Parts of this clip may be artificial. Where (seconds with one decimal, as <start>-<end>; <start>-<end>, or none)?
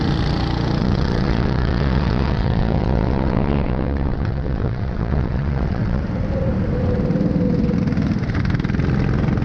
0.8-6.0